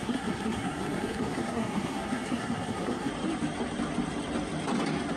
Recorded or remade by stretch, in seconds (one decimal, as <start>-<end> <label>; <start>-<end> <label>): 0.0-3.1 remade; 3.1-5.2 recorded